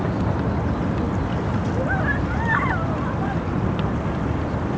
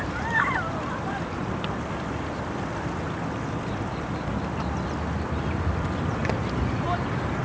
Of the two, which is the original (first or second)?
first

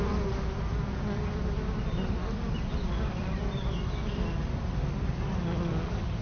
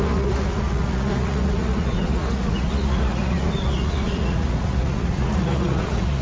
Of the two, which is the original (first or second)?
first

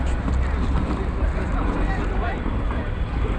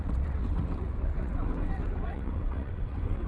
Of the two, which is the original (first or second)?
first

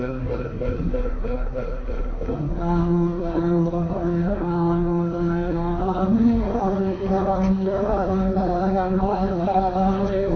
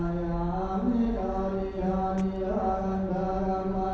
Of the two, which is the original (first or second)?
second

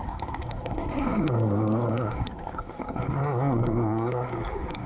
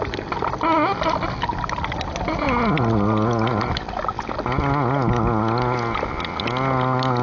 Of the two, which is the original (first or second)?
second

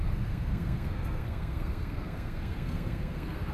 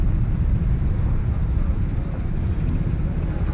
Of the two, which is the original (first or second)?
second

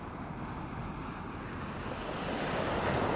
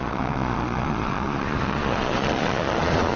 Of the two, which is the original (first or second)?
first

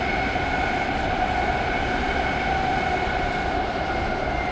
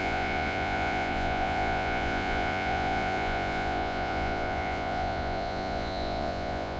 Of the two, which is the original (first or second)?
first